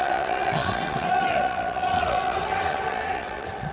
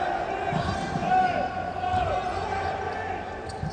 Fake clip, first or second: first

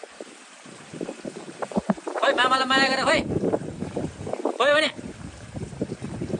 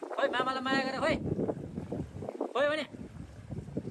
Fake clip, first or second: first